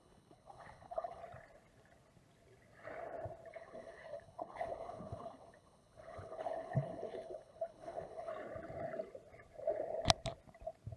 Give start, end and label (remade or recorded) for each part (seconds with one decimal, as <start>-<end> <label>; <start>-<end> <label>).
0.0-1.2 remade; 1.2-3.5 recorded; 3.5-8.3 remade; 8.3-11.0 recorded